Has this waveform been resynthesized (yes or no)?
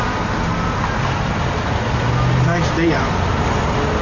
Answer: no